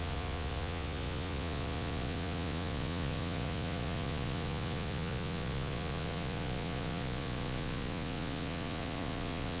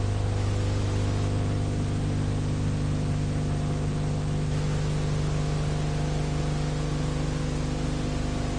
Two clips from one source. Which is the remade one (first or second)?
first